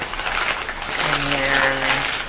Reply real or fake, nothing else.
real